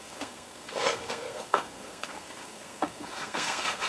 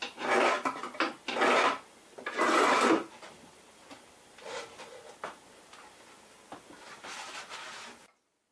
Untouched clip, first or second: second